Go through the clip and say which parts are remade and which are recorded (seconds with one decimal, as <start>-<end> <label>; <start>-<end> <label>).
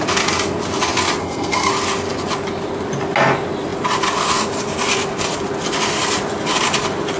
0.0-1.2 recorded; 1.2-1.7 remade; 1.7-7.2 recorded